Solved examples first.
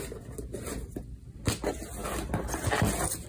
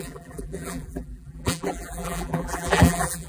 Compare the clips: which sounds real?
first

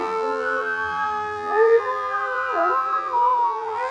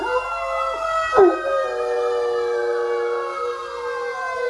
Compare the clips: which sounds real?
second